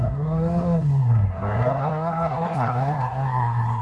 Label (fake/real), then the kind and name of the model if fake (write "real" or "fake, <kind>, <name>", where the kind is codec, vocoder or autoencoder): fake, codec, SNAC